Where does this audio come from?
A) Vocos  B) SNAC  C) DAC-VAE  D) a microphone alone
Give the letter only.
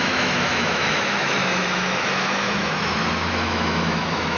C